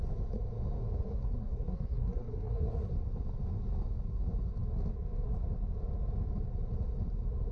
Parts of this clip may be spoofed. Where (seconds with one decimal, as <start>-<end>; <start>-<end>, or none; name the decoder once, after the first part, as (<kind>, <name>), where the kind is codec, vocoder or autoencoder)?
1.1-2.9 (codec, SNAC)